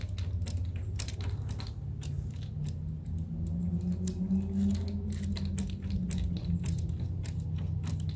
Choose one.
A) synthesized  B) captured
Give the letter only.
B